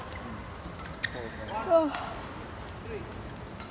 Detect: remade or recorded recorded